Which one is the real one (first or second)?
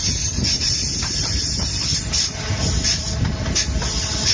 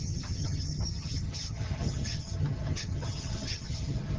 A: first